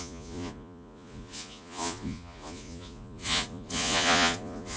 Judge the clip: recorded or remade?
remade